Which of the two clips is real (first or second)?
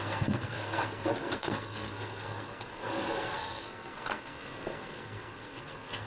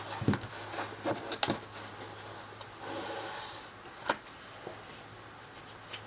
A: second